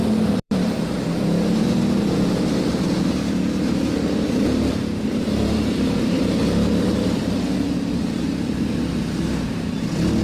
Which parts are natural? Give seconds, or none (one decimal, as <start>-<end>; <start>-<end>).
6.4-6.9